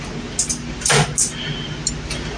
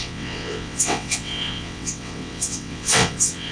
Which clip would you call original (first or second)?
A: first